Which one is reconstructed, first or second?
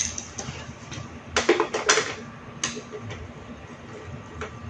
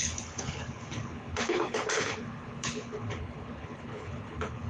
second